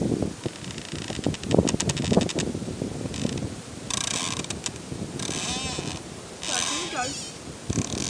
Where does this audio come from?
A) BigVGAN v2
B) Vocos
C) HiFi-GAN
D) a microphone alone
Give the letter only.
D